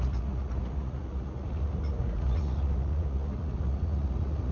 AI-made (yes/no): yes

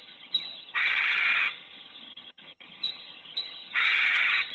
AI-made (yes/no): yes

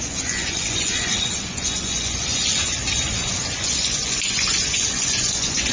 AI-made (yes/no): yes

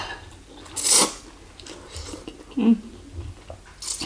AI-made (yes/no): no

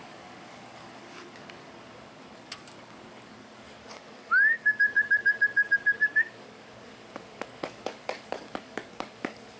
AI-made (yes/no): yes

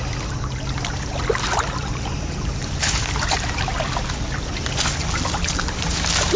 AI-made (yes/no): no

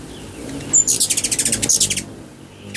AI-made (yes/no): no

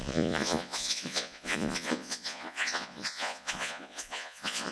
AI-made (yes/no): yes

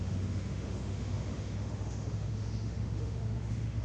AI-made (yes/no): yes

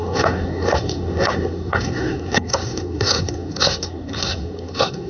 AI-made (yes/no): yes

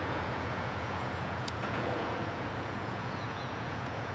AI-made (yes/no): yes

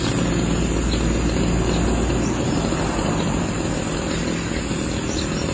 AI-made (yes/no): no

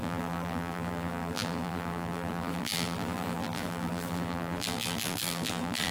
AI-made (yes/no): yes